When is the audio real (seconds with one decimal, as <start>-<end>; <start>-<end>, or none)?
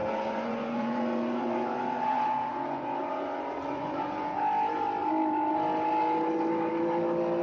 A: 4.4-7.4